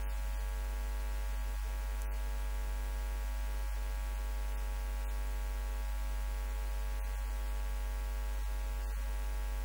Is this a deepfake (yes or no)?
no